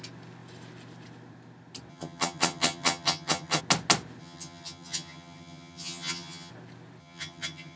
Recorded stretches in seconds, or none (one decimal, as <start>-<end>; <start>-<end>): 0.0-1.9; 3.6-4.2; 6.5-7.0